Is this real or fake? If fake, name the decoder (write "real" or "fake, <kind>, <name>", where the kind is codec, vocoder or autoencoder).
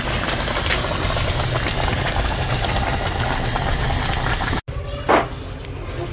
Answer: real